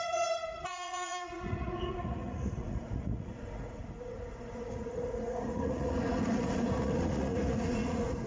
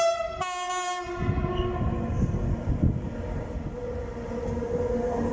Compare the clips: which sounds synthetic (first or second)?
first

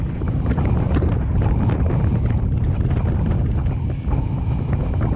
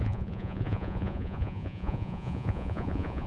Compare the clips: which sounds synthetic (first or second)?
second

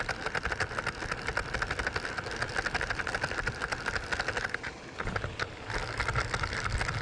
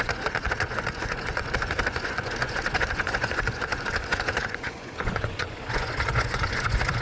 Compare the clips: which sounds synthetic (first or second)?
second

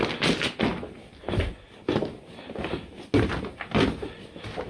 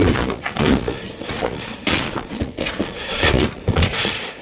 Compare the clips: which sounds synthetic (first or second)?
second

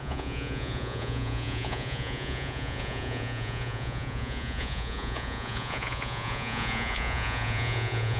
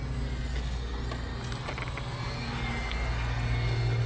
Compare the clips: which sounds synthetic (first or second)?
first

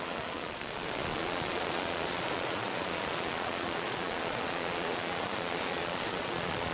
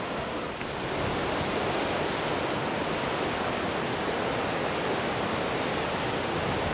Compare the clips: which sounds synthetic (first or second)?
first